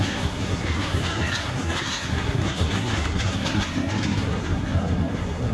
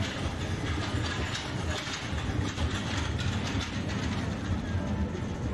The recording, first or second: second